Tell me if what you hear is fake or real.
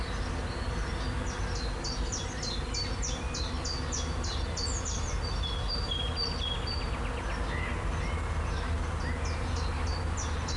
real